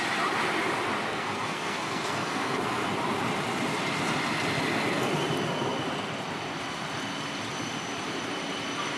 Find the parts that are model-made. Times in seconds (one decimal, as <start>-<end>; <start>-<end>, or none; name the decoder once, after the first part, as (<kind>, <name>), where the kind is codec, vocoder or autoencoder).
1.1-2.9 (codec, SNAC)